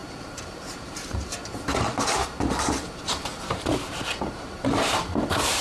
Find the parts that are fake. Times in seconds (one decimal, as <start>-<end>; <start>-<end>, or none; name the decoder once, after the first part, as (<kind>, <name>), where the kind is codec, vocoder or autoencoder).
0.0-1.5 (vocoder, BigVGAN v2); 2.2-5.6